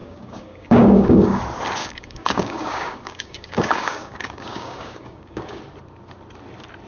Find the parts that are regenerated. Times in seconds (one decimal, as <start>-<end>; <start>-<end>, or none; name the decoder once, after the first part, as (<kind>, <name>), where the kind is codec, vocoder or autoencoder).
0.0-1.4 (codec, DAC); 1.8-5.6